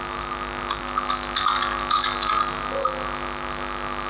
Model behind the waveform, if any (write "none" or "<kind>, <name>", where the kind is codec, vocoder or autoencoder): none